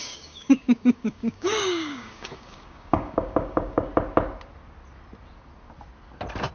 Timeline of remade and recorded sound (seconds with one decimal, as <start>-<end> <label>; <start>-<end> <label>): 0.0-3.9 remade; 3.9-6.5 recorded